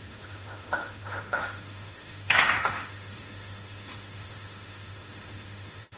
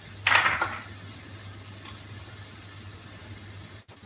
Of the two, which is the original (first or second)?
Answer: second